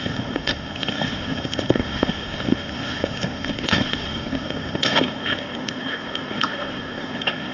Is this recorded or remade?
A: remade